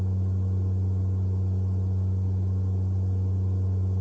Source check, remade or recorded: recorded